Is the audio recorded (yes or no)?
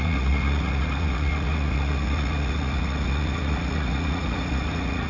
no